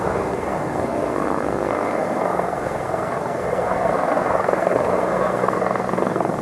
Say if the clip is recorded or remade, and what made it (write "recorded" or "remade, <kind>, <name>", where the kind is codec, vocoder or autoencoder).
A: remade, codec, SNAC